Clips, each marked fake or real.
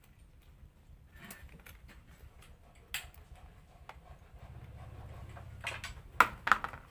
real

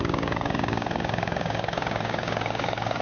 fake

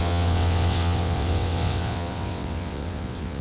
fake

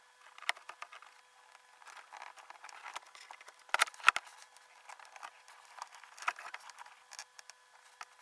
real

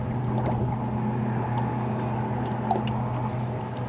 real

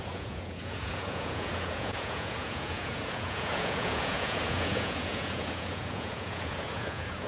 fake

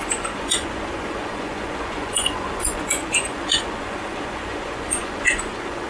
fake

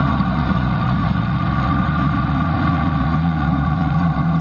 fake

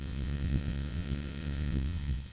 fake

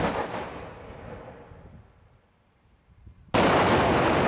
real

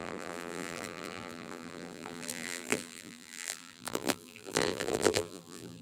fake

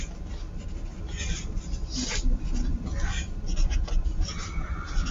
fake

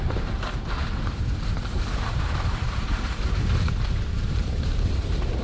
fake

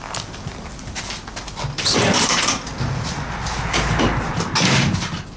real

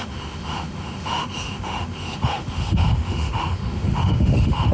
fake